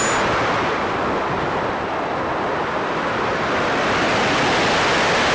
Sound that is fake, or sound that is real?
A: real